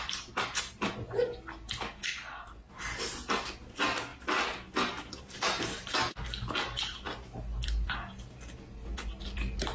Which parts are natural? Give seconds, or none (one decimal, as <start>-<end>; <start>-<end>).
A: 0.0-9.7